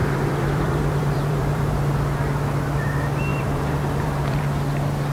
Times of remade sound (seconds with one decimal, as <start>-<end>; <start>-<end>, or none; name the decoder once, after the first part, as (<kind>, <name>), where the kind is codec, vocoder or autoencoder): 0.0-1.7 (vocoder, BigVGAN v2); 3.3-4.4